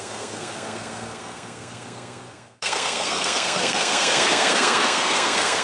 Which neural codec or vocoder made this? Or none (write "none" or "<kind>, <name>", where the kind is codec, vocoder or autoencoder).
codec, SNAC